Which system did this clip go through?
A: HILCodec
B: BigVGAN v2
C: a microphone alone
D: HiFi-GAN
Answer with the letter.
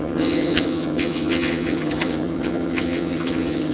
D